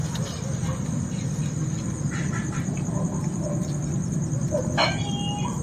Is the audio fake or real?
real